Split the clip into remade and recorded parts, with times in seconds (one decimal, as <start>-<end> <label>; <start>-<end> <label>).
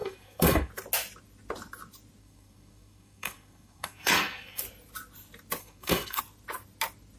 0.0-0.7 remade; 0.7-2.2 recorded; 2.2-4.6 remade; 4.6-5.6 recorded; 5.6-6.2 remade; 6.2-7.2 recorded